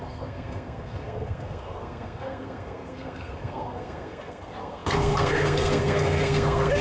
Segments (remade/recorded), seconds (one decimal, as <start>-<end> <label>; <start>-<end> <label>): 0.0-6.8 remade

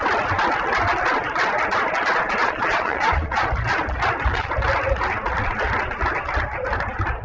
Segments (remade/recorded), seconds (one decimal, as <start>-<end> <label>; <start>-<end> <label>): 0.0-2.4 recorded; 2.4-3.5 remade; 3.5-7.2 recorded

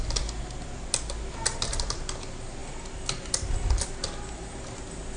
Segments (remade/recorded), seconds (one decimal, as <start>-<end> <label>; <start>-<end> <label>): 0.0-5.2 recorded